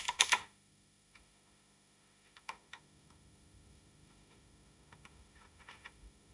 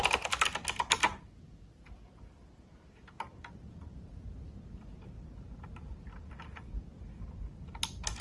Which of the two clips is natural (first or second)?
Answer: second